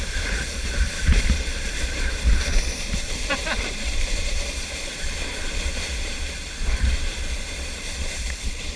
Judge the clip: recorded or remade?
remade